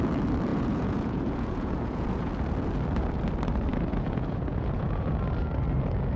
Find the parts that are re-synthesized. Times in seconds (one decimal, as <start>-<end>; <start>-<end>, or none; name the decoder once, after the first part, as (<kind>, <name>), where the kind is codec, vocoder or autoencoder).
0.5-2.3 (vocoder, Vocos); 3.7-5.1